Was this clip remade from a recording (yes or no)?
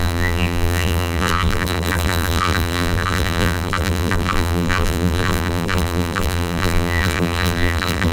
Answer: yes